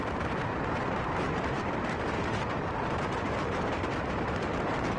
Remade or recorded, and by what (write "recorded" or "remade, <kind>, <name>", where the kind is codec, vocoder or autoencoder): remade, vocoder, BigVGAN v2